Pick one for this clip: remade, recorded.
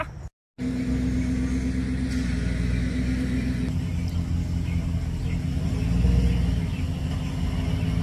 recorded